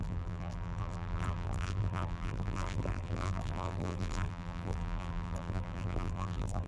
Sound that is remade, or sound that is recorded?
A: remade